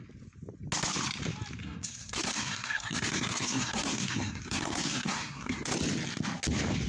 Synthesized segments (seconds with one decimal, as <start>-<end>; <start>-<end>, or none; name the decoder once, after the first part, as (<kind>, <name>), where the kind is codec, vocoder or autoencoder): 1.6-5.7 (codec, SNAC)